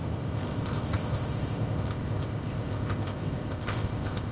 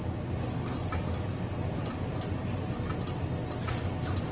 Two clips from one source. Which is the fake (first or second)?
first